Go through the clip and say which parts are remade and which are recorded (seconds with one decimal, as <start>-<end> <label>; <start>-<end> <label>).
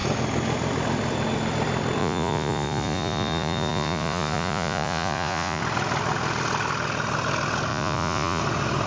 0.0-2.0 recorded; 2.0-5.6 remade; 5.6-7.7 recorded; 7.7-8.4 remade; 8.4-8.9 recorded